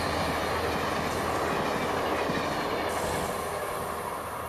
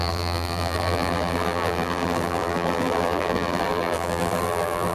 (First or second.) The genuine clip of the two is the first